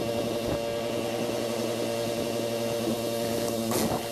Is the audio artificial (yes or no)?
no